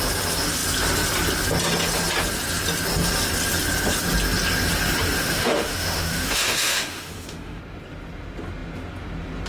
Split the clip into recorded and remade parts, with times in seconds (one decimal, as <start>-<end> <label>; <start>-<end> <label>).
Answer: 0.0-5.2 recorded; 5.2-7.6 remade; 7.6-9.5 recorded